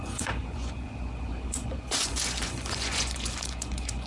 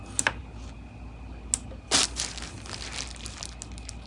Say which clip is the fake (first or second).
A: first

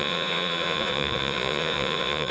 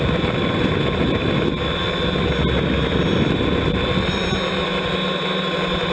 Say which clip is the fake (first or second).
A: first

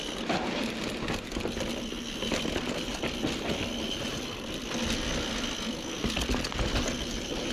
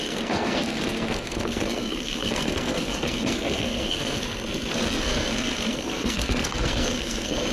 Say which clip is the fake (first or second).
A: second